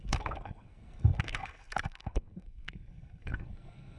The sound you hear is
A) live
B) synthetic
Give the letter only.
B